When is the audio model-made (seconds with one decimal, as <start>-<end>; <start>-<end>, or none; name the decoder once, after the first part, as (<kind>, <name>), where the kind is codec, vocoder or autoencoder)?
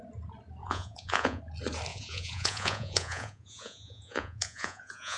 0.6-1.4 (vocoder, Vocos); 1.9-5.2